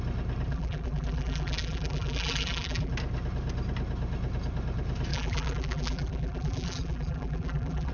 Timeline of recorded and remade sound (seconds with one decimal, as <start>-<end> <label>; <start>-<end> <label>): 0.0-0.5 recorded; 0.5-2.9 remade; 2.9-5.1 recorded; 5.1-7.9 remade